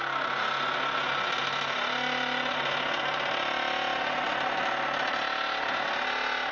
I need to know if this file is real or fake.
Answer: real